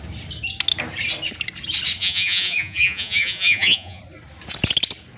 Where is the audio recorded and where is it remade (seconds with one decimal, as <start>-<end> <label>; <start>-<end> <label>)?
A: 0.0-2.0 recorded; 2.0-4.0 remade; 4.0-5.2 recorded